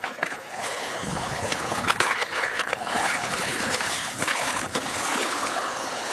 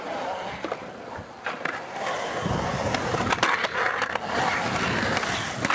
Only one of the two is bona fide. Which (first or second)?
second